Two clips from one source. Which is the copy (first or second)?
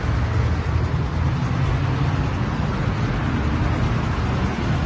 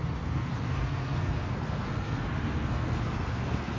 second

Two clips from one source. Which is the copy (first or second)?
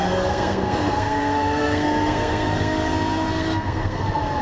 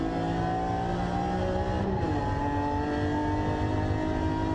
first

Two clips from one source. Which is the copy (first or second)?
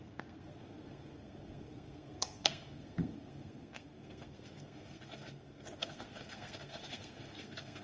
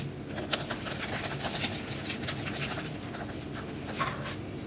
first